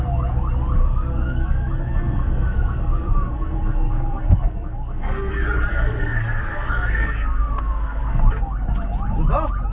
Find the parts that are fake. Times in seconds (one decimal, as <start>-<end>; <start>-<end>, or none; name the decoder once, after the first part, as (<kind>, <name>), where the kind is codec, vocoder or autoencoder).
0.8-5.3 (codec, SNAC); 5.7-8.2

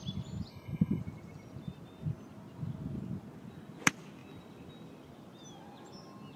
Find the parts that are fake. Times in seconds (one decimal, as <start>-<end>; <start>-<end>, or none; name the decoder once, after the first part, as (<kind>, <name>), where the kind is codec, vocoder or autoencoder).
0.5-1.0 (codec, SNAC)

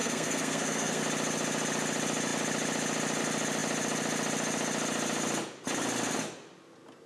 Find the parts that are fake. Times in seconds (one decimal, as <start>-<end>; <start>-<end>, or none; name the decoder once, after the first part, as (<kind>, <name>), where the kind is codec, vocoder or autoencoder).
0.0-1.0 (codec, SNAC)

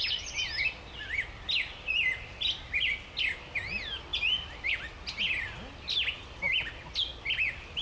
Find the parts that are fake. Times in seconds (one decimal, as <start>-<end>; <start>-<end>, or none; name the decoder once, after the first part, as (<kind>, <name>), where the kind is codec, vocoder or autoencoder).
none

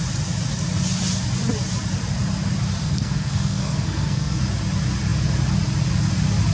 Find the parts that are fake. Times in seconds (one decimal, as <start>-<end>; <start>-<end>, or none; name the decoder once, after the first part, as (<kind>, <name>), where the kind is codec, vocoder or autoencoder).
2.8-4.4 (codec, SNAC)

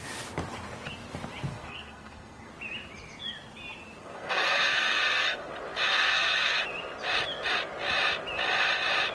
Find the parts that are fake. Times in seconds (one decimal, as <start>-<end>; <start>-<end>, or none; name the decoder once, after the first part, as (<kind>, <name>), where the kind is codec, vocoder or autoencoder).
1.5-2.5 (codec, SNAC); 4.0-5.5; 5.9-6.6

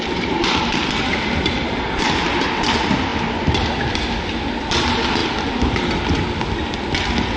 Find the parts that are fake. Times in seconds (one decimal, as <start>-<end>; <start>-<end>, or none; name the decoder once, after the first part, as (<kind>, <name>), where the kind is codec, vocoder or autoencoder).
none